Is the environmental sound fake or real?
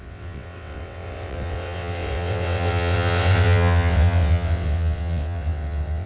fake